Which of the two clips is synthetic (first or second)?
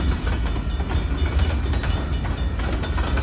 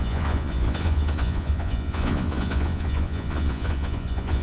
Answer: second